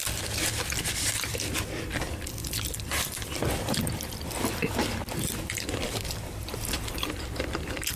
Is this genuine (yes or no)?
no